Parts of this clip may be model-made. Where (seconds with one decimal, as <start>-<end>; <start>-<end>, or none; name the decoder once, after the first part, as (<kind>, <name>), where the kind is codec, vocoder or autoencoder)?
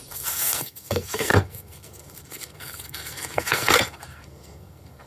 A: 0.0-5.1 (codec, SNAC)